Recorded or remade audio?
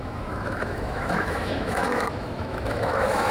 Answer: remade